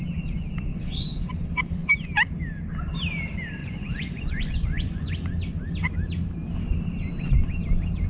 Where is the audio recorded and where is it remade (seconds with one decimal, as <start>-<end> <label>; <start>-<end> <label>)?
0.0-0.7 recorded; 0.7-1.3 remade; 1.3-3.6 recorded; 3.6-5.1 remade; 5.1-8.1 recorded